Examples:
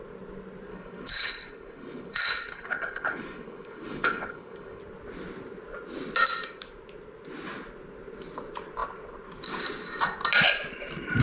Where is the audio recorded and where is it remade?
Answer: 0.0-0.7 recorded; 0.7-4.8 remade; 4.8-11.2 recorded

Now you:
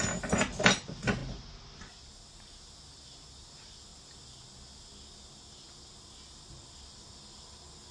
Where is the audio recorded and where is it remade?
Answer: 0.0-7.9 recorded

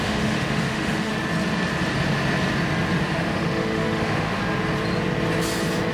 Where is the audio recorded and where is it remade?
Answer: 0.0-1.1 remade; 1.1-3.0 recorded; 3.0-4.4 remade; 4.4-5.9 recorded

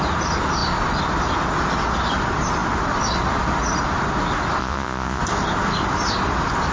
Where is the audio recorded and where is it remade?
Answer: 0.0-4.6 recorded; 4.6-5.2 remade; 5.2-6.7 recorded

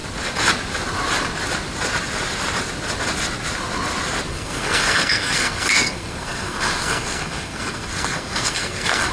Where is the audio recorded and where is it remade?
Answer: 0.0-4.3 recorded; 4.3-9.1 remade

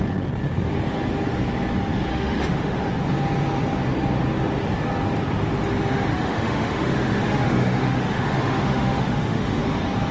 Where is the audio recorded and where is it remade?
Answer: 0.0-2.1 recorded; 2.1-2.9 remade; 2.9-6.1 recorded; 6.1-9.6 remade; 9.6-10.1 recorded